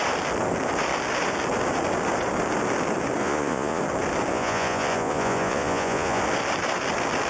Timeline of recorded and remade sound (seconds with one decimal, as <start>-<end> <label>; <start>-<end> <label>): 0.0-3.2 recorded; 3.2-3.8 remade; 3.8-4.3 recorded; 4.3-6.2 remade; 6.2-7.3 recorded